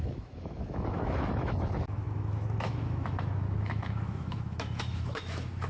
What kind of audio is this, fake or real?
fake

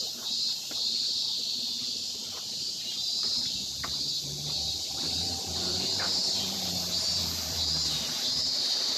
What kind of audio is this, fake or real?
fake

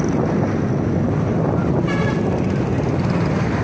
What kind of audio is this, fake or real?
real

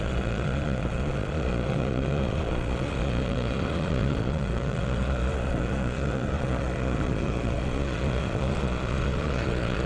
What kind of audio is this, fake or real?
fake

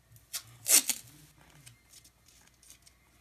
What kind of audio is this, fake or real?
real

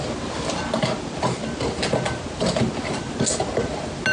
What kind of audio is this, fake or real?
real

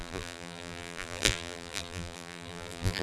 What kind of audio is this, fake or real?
fake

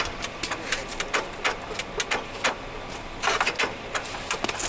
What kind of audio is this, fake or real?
real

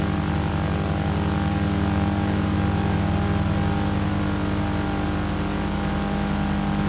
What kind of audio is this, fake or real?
real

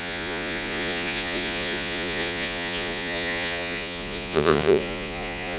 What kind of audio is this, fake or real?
fake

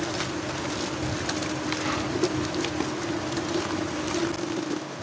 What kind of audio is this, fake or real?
real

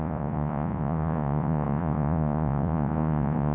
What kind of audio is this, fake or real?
fake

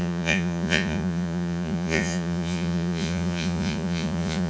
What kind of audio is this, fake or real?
fake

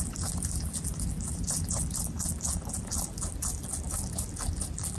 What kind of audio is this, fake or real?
real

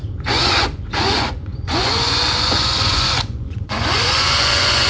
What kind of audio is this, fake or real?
fake